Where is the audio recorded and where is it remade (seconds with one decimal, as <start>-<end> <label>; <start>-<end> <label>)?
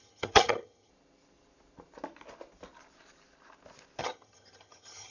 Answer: 0.0-0.9 remade; 0.9-4.0 recorded; 4.0-5.1 remade